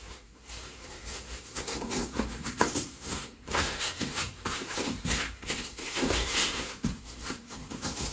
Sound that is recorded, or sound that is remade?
remade